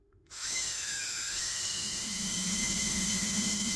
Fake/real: fake